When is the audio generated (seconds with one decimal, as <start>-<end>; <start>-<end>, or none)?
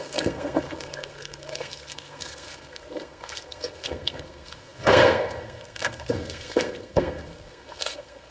0.0-8.3